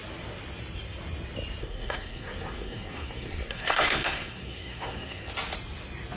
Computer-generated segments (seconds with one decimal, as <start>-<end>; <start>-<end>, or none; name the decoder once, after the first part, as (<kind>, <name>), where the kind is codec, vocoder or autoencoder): 1.6-5.3 (codec, SNAC)